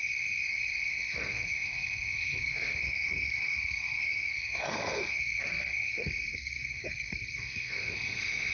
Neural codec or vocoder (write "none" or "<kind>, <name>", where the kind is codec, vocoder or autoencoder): codec, SNAC